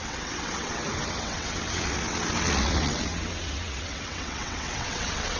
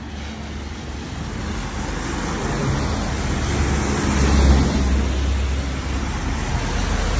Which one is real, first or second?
second